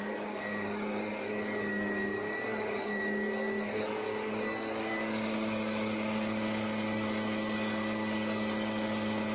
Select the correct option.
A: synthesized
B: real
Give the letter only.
A